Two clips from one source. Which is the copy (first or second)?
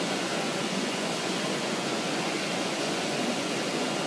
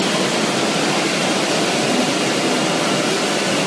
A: first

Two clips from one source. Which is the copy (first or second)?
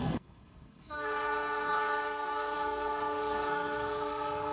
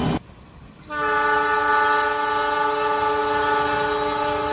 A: first